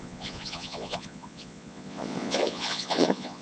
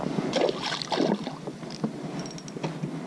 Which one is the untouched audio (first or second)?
second